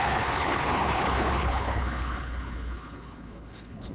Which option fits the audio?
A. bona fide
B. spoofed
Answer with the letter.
B